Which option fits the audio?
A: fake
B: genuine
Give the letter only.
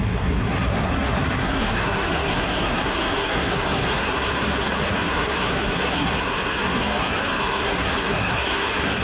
A